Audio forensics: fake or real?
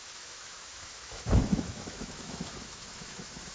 fake